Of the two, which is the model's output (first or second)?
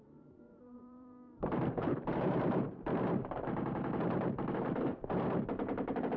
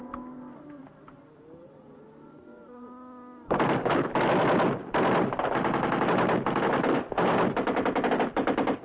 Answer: first